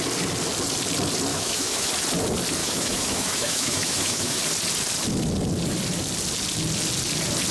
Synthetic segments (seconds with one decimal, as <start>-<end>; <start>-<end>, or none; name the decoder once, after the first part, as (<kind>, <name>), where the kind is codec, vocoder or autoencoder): 1.3-1.9 (autoencoder, DAC-VAE); 2.6-4.4